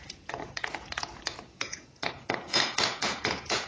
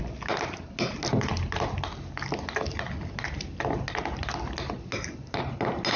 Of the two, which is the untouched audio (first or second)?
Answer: second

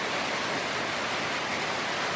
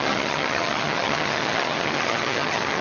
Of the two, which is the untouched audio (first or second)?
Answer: first